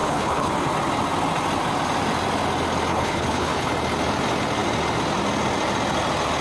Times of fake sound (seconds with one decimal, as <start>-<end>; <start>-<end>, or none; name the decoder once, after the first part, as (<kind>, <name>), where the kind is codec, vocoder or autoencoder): 0.0-0.5 (codec, HILCodec); 2.9-3.7